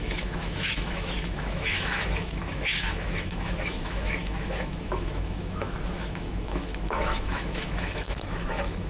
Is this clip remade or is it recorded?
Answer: remade